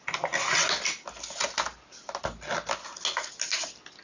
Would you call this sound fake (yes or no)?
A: no